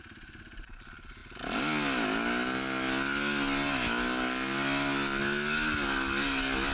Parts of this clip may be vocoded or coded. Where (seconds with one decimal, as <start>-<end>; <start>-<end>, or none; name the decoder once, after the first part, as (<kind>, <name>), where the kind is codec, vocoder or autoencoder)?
none